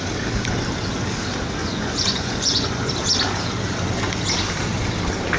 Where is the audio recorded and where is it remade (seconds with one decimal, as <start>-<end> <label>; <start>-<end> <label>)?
0.0-1.6 recorded; 1.6-2.9 remade; 2.9-5.4 recorded